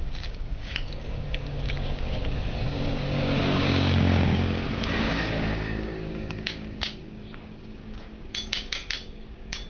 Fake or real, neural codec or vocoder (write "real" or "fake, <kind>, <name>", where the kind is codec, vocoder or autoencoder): fake, codec, DAC